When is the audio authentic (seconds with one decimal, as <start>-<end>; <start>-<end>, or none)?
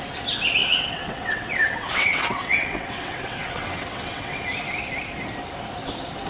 0.0-0.6; 4.4-6.3